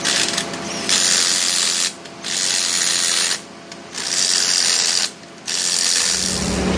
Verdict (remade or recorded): recorded